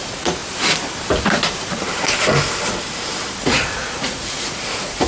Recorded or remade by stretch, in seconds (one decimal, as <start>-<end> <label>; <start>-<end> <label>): 0.0-0.4 remade; 0.4-3.5 recorded; 3.5-5.1 remade